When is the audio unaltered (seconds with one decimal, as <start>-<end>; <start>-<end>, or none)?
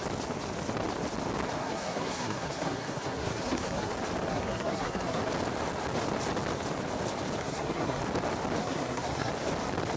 0.0-1.6; 3.9-4.3; 5.2-7.4; 8.0-8.6; 9.3-10.0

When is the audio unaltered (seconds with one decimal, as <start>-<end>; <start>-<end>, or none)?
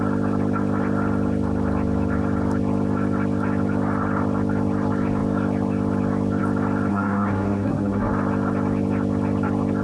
0.0-6.9; 8.1-9.8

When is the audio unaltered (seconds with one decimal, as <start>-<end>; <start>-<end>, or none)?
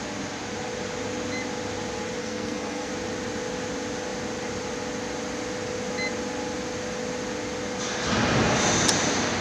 0.0-2.2; 2.9-9.4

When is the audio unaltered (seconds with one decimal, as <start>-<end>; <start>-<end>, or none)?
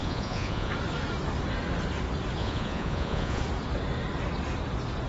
0.7-2.4; 3.4-5.1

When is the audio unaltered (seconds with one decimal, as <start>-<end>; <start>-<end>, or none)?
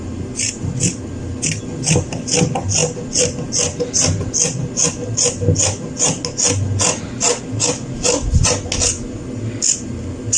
0.0-10.4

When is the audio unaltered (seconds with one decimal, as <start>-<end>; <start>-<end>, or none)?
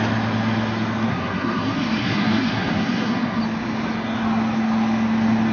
0.0-1.1; 3.4-5.5